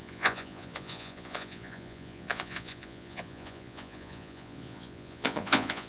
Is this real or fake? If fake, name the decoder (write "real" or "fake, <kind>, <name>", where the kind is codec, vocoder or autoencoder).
fake, vocoder, Vocos